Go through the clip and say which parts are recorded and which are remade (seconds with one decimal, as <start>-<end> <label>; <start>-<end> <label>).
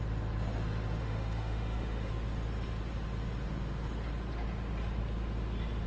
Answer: 0.0-1.0 recorded; 1.0-2.1 remade; 2.1-5.9 recorded